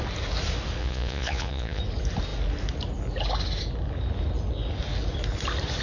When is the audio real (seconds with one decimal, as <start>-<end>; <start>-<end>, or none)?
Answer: 0.0-0.8; 1.8-5.8